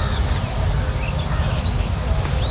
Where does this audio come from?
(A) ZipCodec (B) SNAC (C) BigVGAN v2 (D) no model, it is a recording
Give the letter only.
D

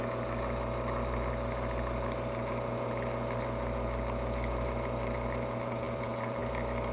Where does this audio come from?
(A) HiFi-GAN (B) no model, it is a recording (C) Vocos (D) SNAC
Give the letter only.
B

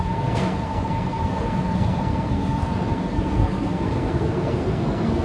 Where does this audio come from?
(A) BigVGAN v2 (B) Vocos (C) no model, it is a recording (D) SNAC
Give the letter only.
D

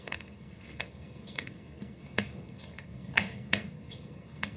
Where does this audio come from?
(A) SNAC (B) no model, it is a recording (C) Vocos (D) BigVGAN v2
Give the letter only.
A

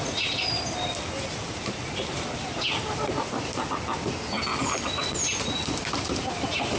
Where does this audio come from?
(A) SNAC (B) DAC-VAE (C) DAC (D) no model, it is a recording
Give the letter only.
D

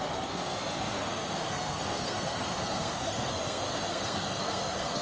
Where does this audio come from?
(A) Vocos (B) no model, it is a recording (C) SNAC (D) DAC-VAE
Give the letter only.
C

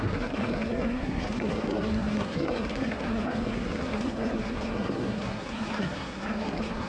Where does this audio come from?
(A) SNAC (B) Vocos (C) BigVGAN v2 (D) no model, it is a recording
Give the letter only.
A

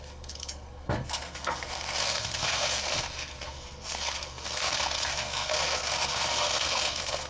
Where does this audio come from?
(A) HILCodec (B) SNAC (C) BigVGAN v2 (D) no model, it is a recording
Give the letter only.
B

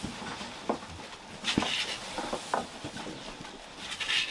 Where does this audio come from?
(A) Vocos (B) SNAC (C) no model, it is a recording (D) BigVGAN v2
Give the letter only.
C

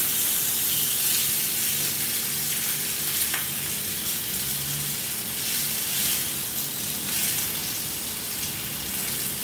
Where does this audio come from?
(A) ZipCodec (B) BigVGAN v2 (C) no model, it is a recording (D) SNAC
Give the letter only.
C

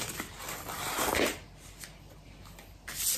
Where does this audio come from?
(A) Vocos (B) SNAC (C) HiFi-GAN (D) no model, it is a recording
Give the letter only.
D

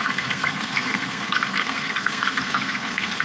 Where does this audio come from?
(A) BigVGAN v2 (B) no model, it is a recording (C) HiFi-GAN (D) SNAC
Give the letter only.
D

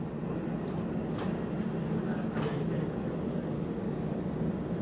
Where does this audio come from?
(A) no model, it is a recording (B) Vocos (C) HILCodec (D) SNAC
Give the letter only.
A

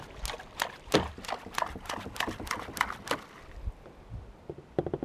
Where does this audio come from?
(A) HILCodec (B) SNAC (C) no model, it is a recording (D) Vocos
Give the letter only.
C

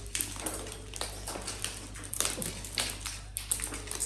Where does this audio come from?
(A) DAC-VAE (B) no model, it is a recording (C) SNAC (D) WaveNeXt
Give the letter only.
B